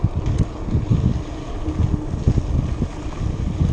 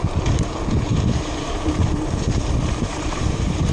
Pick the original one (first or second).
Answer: first